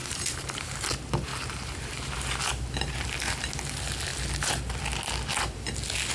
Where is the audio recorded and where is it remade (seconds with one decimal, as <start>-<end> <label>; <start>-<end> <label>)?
0.0-0.8 remade; 0.8-1.3 recorded; 1.3-2.3 remade; 2.3-6.1 recorded